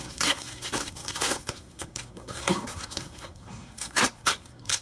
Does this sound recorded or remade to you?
remade